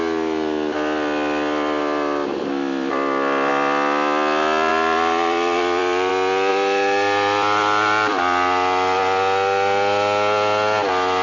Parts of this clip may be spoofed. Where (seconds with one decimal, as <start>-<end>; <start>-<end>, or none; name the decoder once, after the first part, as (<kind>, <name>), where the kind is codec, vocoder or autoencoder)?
2.3-3.5 (vocoder, BigVGAN v2); 4.7-6.1; 6.5-8.2